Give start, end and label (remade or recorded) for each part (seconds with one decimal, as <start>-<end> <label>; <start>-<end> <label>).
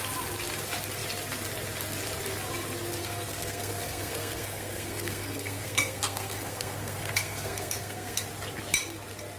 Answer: 0.0-3.0 recorded; 3.0-8.2 remade; 8.2-9.4 recorded